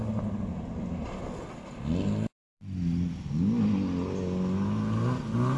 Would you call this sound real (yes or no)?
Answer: yes